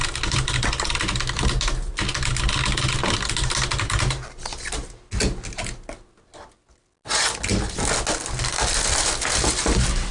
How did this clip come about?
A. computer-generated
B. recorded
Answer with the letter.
B